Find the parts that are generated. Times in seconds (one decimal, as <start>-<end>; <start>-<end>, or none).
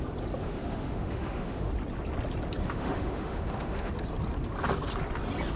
0.4-1.7; 2.6-3.9